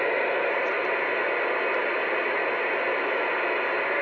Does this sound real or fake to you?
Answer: real